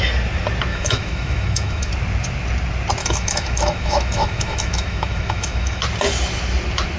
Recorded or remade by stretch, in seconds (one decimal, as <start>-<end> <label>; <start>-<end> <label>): 0.0-0.7 recorded; 0.7-1.9 remade; 1.9-3.0 recorded; 3.0-5.8 remade; 5.8-7.0 recorded